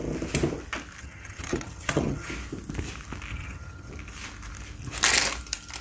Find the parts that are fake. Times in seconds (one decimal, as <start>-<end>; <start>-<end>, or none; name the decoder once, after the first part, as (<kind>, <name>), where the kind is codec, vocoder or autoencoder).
1.0-2.3 (vocoder, HiFi-GAN); 3.3-3.9